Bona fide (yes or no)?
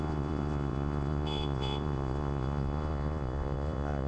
no